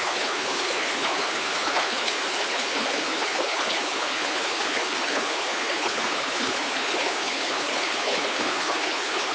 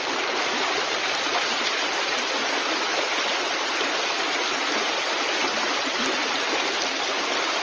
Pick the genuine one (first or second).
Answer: second